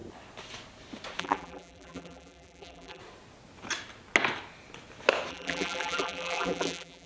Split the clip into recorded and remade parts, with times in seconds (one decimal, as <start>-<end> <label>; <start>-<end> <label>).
0.0-1.2 recorded; 1.2-3.0 remade; 3.0-5.3 recorded; 5.3-7.1 remade